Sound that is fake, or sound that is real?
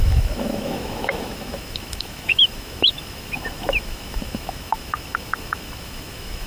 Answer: fake